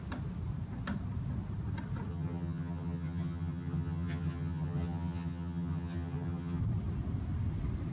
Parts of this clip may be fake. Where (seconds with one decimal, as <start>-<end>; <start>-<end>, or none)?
2.1-6.6